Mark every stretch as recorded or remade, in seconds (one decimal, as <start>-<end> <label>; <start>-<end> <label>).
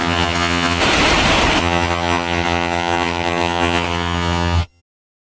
0.0-0.8 remade; 0.8-1.6 recorded; 1.6-4.8 remade; 4.8-5.4 recorded